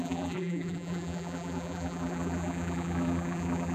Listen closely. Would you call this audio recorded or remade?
remade